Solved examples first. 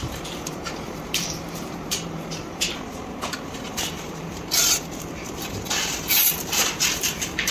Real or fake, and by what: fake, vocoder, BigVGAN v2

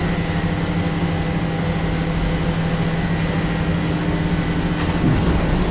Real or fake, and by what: real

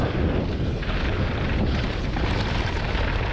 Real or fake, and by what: real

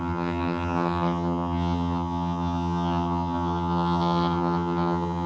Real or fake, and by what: fake, vocoder, HiFi-GAN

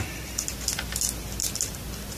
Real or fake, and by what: real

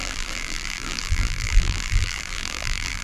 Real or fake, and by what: fake, vocoder, BigVGAN v2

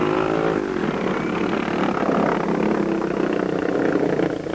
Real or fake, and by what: real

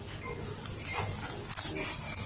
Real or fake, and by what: real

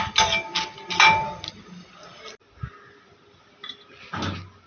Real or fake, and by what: real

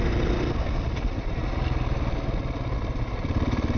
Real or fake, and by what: real